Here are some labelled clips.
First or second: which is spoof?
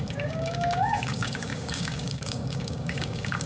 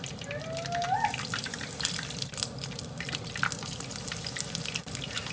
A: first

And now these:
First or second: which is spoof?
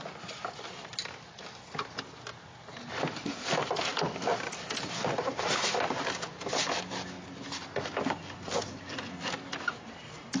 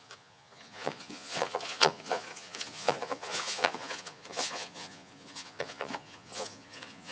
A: second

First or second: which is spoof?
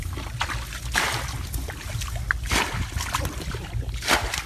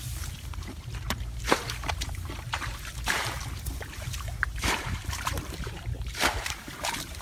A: second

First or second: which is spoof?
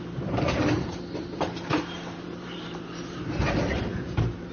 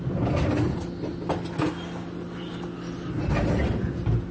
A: first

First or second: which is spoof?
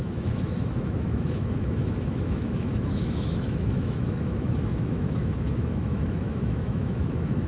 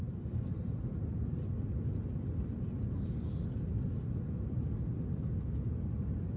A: first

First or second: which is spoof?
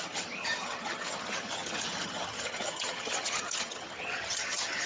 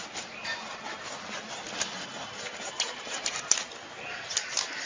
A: first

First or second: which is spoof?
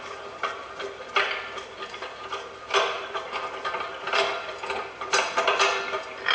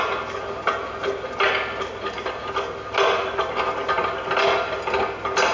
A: first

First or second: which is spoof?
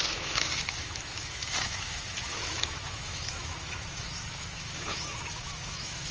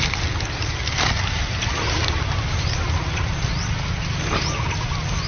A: first